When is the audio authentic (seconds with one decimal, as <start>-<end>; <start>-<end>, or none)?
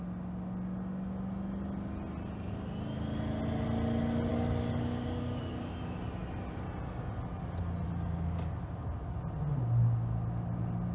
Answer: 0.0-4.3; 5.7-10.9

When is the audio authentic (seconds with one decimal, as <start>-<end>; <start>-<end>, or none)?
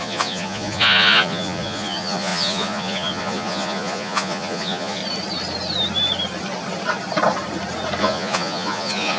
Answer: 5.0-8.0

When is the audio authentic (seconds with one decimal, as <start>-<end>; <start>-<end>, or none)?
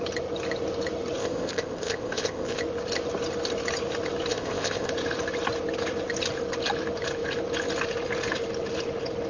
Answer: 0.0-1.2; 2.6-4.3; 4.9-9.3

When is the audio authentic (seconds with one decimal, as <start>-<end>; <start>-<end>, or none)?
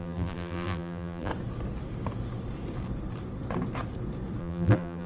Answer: 1.3-4.4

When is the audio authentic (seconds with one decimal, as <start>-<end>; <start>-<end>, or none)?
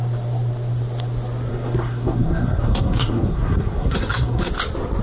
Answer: 0.0-1.5; 4.5-5.0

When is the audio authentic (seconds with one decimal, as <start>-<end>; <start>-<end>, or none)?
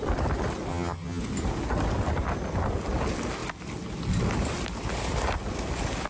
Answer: 0.0-0.7; 1.2-6.1